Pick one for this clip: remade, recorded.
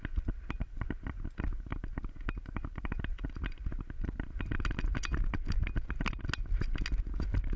recorded